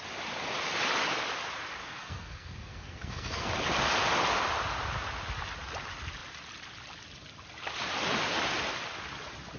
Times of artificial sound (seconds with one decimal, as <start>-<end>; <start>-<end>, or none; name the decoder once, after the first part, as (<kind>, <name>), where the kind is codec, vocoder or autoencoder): 1.8-3.5 (codec, SNAC)